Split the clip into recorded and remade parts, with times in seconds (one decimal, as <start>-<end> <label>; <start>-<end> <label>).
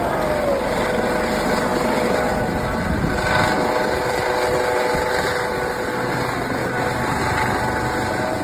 0.0-1.7 recorded; 1.7-3.7 remade; 3.7-6.6 recorded; 6.6-7.2 remade; 7.2-8.4 recorded